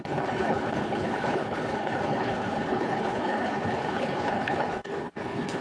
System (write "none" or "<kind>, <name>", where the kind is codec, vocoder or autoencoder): codec, HILCodec